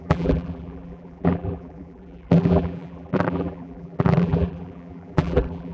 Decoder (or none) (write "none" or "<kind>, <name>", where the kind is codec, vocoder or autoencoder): vocoder, BigVGAN v2